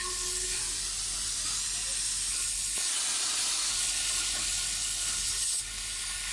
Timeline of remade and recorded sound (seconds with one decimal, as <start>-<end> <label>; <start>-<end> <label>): 0.0-0.6 remade; 0.6-2.3 recorded; 2.3-2.9 remade; 2.9-3.7 recorded; 3.7-6.3 remade